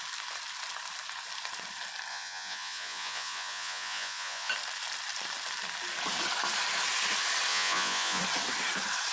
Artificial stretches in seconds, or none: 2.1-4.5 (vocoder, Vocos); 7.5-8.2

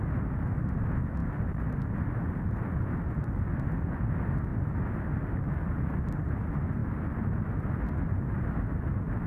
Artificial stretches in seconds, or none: none